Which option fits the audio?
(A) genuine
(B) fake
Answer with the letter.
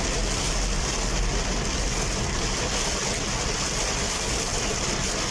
A